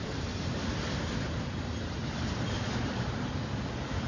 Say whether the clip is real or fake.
real